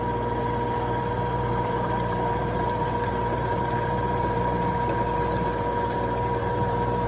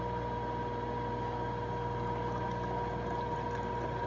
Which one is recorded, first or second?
second